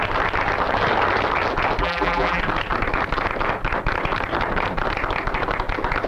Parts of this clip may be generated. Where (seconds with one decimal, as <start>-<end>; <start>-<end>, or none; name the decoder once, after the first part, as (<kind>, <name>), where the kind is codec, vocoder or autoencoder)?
1.8-2.4 (vocoder, BigVGAN v2)